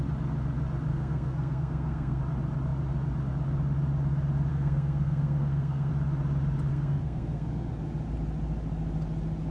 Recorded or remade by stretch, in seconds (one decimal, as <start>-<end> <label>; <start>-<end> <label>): 0.0-0.9 recorded; 0.9-2.2 remade; 2.2-4.5 recorded; 4.5-5.9 remade; 5.9-6.7 recorded; 6.7-7.7 remade; 7.7-9.5 recorded